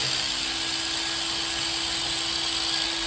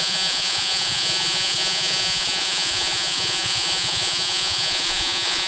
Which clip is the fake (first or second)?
second